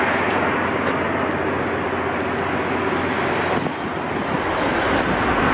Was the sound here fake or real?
real